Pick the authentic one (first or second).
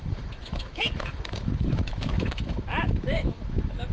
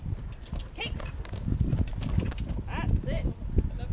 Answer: second